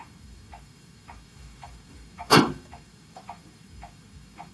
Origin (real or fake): fake